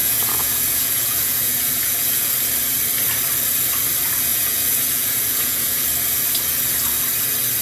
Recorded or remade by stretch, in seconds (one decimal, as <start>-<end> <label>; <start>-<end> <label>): 0.0-2.3 remade; 2.3-4.3 recorded; 4.3-5.8 remade; 5.8-7.6 recorded